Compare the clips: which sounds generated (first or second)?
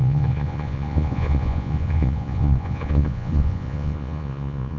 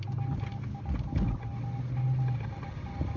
first